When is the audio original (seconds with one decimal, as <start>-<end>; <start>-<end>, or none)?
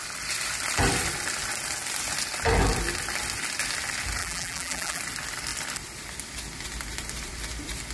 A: 0.0-4.2; 5.0-7.9